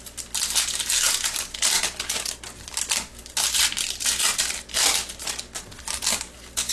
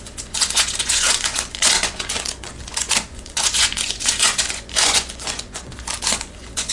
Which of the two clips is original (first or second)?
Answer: first